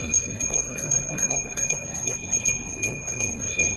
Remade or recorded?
remade